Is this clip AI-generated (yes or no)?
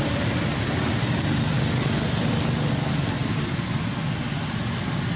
no